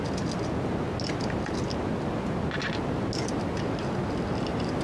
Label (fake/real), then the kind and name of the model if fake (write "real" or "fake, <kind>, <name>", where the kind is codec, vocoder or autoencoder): real